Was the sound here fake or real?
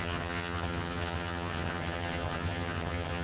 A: fake